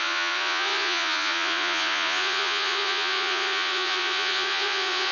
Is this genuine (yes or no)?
no